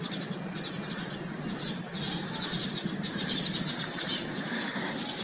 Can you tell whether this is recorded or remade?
recorded